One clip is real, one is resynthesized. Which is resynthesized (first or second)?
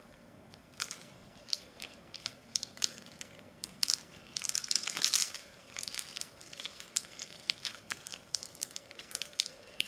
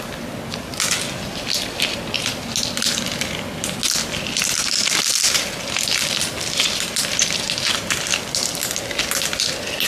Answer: first